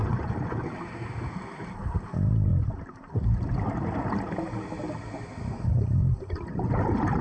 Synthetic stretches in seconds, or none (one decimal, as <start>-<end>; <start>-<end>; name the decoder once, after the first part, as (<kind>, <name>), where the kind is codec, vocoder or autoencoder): 0.0-0.7 (vocoder, Vocos)